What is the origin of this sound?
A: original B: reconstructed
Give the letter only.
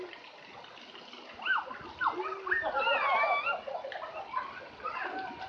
A